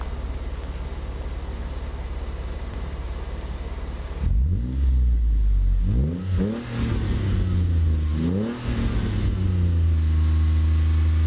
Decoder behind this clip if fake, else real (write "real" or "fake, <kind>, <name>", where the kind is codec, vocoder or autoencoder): real